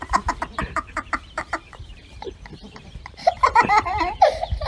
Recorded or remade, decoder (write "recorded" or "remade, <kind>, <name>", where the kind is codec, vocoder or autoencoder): remade, vocoder, BigVGAN v2